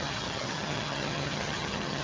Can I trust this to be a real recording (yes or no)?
no